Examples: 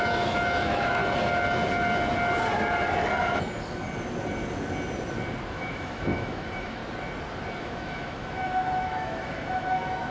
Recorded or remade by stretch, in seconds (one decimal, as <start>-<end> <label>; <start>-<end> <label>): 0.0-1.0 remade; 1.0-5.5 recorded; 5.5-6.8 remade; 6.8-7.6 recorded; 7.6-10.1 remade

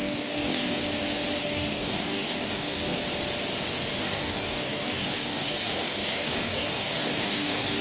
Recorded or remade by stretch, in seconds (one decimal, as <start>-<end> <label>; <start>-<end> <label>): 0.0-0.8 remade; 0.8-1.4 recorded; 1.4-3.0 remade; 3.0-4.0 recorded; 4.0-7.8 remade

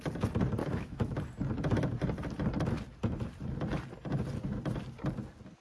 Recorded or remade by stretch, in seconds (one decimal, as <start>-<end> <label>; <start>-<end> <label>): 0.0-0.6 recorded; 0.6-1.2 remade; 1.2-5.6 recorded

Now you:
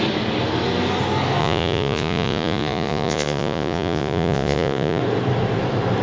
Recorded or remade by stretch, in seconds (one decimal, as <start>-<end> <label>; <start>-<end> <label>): 0.0-1.4 recorded; 1.4-5.0 remade; 5.0-6.0 recorded

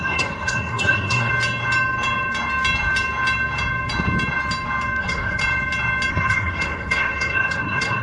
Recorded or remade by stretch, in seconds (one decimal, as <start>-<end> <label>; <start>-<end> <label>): 0.0-1.3 remade; 1.3-5.0 recorded; 5.0-5.4 remade; 5.4-6.1 recorded; 6.1-8.0 remade

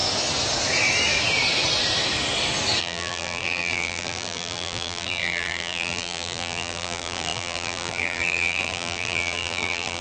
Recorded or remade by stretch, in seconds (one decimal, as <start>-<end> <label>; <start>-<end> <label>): 0.0-2.8 recorded; 2.8-10.0 remade